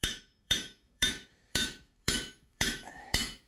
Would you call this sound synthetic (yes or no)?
yes